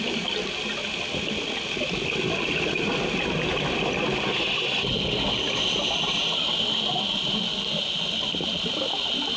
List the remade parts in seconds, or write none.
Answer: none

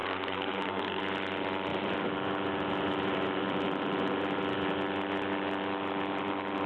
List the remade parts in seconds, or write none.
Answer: 0.0-1.0 (codec, SNAC)

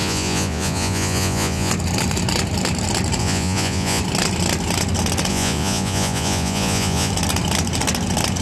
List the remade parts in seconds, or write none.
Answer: 0.0-1.7 (vocoder, Vocos); 3.2-4.0; 5.3-7.1

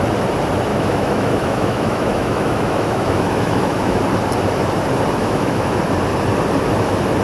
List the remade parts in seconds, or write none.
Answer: 0.7-4.0 (autoencoder, DAC-VAE); 5.2-5.8